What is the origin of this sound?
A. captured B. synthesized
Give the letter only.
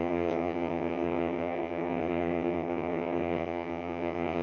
B